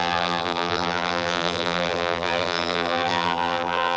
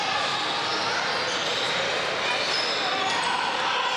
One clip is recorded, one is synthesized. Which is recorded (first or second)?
second